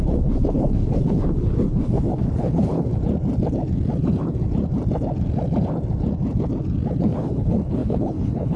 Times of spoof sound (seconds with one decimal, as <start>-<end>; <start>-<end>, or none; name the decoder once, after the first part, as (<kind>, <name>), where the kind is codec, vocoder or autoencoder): 0.0-2.9 (codec, HILCodec); 7.0-8.6